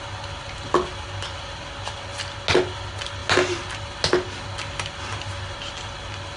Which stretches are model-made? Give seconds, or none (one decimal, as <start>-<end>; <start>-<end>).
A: none